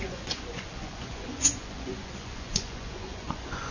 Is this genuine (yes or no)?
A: no